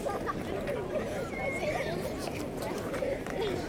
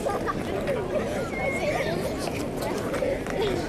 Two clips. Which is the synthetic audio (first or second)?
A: first